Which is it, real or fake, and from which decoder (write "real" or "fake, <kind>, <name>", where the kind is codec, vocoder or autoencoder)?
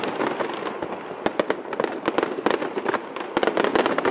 real